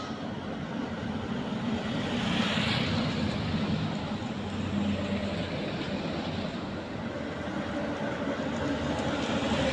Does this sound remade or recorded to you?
recorded